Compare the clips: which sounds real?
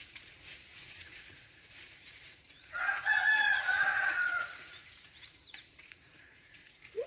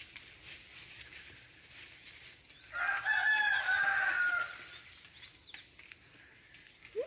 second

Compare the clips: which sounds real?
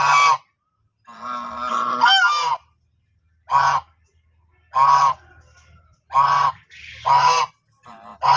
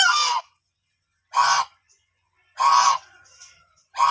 first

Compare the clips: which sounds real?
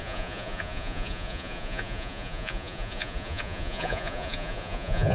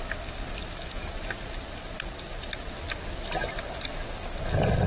second